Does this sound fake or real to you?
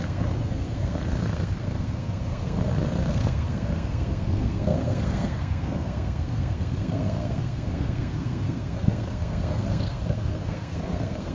fake